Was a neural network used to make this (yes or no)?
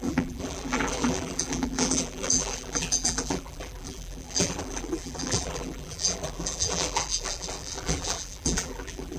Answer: yes